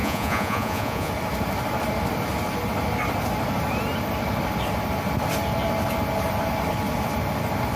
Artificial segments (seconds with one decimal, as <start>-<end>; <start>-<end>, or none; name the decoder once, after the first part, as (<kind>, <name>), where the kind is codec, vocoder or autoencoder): 0.0-1.1 (vocoder, Vocos)